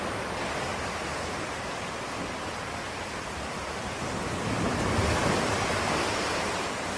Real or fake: real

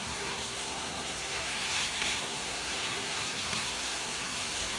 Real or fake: fake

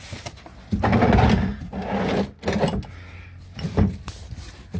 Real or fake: real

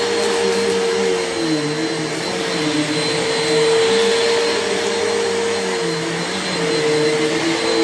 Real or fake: real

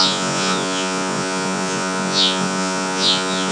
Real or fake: fake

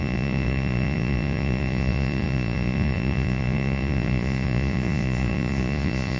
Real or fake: fake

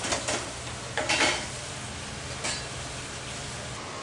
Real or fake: real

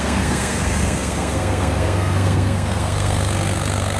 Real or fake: fake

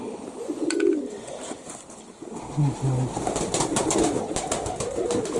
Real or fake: real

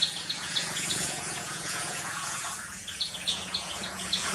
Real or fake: fake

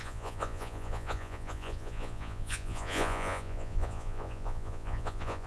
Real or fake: fake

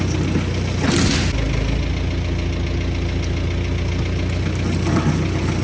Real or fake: real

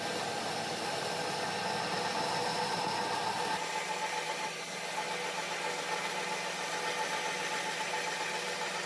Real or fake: real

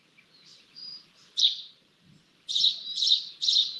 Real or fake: fake